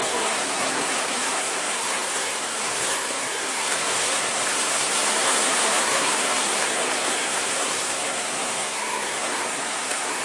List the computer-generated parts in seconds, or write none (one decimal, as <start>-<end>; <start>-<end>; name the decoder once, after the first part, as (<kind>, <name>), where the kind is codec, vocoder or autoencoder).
0.0-10.2 (codec, SNAC)